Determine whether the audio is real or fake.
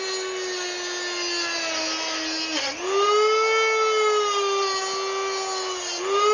real